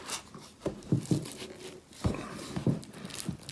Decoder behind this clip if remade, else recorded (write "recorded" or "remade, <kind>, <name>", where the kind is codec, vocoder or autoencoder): recorded